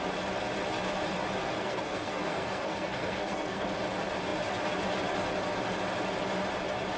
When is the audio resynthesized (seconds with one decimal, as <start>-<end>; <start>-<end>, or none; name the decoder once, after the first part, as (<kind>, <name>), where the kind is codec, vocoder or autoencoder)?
1.4-3.8 (codec, SNAC)